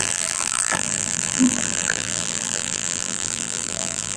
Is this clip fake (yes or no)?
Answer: yes